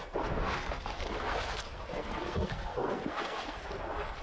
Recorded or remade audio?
remade